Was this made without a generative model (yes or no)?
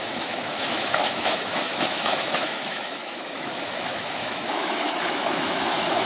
no